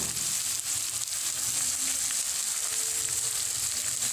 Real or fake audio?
real